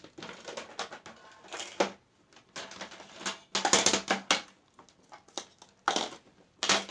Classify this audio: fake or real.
real